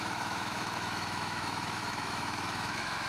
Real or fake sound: fake